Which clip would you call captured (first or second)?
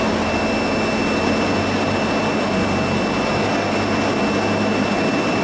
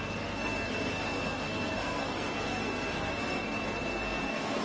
first